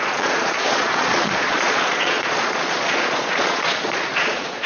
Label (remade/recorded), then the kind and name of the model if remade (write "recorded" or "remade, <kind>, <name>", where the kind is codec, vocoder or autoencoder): remade, vocoder, Vocos